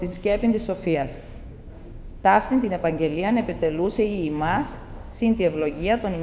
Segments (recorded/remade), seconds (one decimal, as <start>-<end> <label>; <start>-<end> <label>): 0.0-4.6 remade; 4.6-5.2 recorded; 5.2-6.2 remade